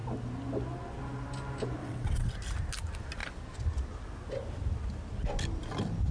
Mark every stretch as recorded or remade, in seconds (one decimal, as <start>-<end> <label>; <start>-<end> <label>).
0.0-1.8 recorded; 1.8-2.3 remade; 2.3-6.1 recorded